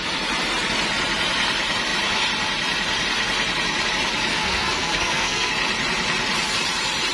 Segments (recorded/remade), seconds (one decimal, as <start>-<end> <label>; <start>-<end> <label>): 0.0-4.3 recorded; 4.3-5.5 remade; 5.5-7.1 recorded